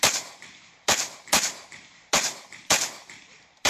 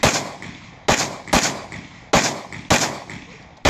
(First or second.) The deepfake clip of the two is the first